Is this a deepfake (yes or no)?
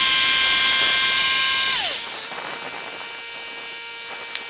no